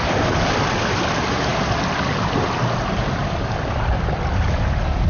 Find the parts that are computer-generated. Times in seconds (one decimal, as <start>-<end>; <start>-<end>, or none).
none